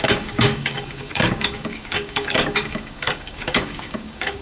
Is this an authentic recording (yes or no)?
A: no